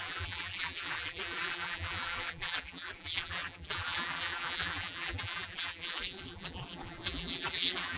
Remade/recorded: remade